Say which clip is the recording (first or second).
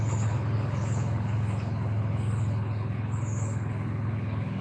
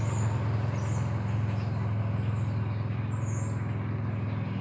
second